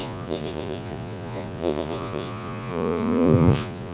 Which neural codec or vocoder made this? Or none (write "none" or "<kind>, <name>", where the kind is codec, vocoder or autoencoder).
vocoder, Vocos